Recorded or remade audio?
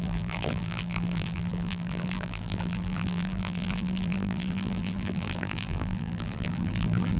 remade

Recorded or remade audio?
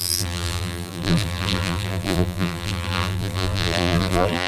remade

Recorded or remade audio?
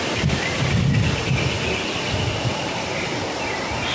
remade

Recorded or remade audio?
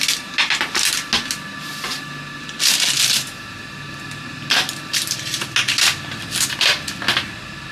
recorded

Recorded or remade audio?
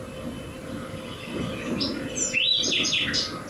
recorded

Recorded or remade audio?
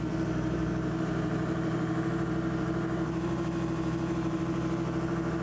remade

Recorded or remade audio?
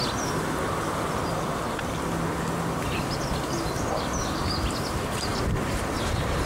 recorded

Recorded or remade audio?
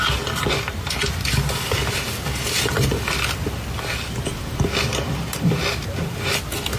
recorded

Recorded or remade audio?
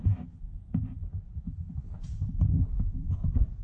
recorded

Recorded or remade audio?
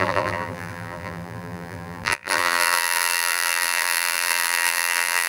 remade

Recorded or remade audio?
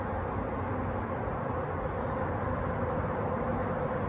recorded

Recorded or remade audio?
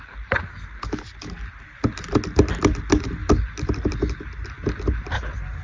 recorded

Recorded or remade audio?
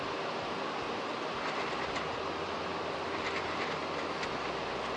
recorded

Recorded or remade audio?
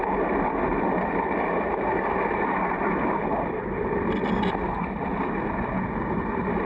recorded